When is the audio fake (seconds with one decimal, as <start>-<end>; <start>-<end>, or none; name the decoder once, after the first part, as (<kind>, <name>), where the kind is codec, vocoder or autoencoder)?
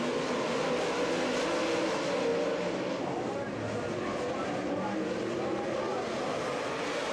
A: none